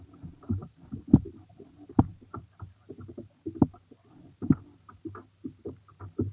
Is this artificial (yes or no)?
no